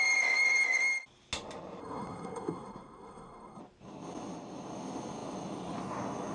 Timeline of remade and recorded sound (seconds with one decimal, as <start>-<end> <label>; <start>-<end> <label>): 0.0-1.8 recorded; 1.8-3.6 remade; 3.6-6.3 recorded